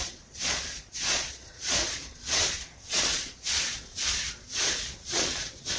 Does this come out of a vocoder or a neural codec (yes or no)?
yes